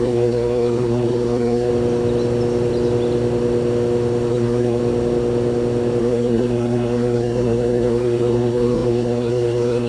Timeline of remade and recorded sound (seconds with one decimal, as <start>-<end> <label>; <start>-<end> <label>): 0.0-1.7 remade; 1.7-4.3 recorded; 4.3-4.8 remade; 4.8-6.0 recorded; 6.0-9.9 remade